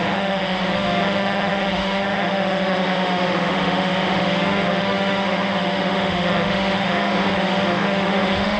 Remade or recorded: remade